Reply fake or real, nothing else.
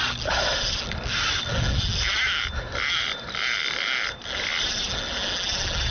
real